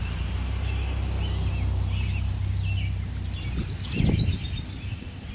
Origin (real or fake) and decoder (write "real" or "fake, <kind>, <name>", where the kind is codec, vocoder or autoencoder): real